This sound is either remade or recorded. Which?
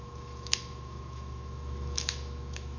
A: remade